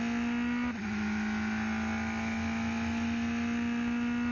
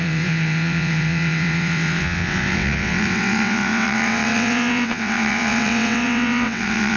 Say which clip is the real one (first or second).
first